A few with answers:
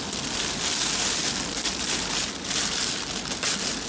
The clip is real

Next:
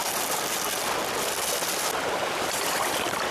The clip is real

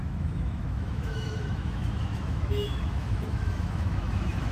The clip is fake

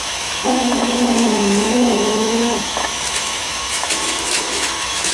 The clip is fake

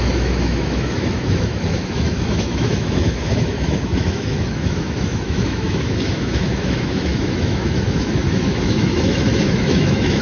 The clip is fake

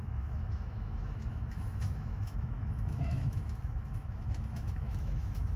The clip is fake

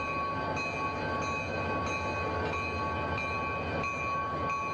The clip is real